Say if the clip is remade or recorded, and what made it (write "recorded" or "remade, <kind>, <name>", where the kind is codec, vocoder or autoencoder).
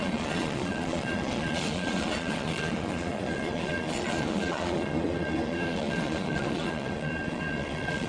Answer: remade, vocoder, Vocos